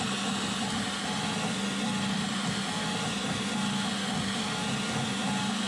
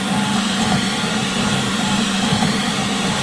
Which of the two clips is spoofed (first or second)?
second